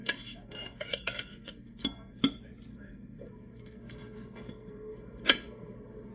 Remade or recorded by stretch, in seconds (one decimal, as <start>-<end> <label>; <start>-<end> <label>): 0.0-2.2 remade; 2.2-2.7 recorded; 2.7-6.1 remade